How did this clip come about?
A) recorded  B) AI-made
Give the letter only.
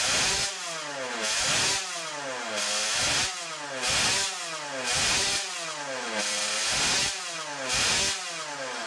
A